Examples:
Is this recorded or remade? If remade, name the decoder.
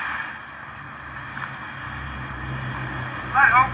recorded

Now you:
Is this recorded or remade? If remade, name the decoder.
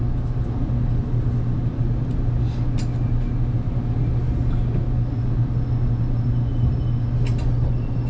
recorded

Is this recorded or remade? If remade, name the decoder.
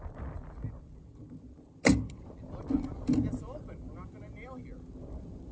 recorded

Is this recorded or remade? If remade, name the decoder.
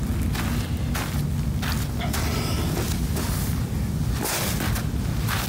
recorded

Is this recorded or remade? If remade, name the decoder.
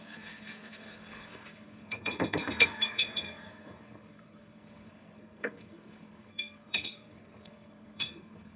remade, codec, SNAC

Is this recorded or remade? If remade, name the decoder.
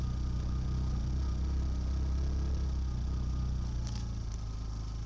recorded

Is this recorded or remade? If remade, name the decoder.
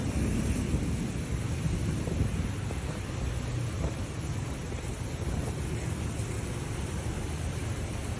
recorded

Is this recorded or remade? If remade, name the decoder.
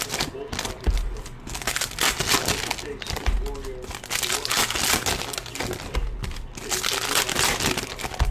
recorded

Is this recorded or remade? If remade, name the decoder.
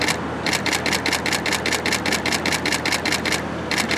recorded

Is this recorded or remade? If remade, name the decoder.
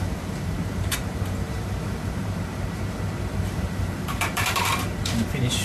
remade, vocoder, BigVGAN v2